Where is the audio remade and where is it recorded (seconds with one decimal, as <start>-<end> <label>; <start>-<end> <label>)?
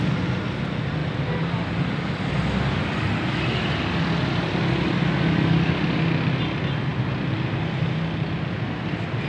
0.0-9.3 recorded